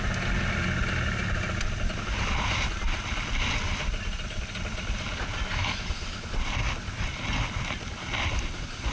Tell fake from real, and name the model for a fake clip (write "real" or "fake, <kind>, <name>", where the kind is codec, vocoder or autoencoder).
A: real